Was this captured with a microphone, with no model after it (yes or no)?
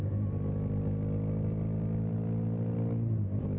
yes